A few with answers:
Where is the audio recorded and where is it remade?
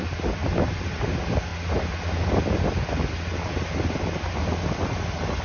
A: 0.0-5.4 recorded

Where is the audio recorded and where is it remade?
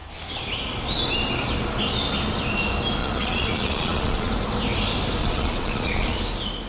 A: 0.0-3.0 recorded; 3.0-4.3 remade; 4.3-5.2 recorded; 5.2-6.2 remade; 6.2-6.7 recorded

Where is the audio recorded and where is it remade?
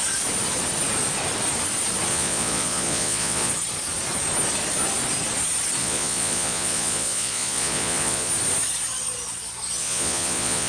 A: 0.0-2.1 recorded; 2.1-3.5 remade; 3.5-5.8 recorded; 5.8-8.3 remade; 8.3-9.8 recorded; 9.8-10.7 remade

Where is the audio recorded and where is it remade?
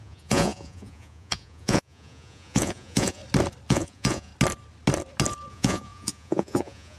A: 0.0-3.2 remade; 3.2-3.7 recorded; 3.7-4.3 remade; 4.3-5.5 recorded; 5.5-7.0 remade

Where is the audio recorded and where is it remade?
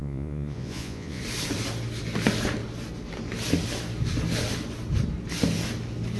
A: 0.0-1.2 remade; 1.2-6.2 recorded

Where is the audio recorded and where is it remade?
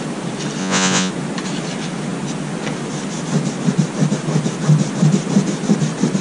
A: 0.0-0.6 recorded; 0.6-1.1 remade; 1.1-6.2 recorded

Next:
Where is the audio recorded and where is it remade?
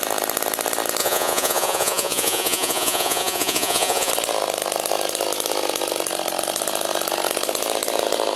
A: 0.0-1.0 recorded; 1.0-4.1 remade; 4.1-8.4 recorded